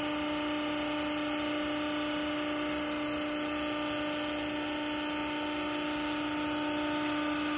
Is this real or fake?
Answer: real